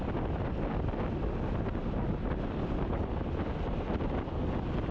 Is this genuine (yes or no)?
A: yes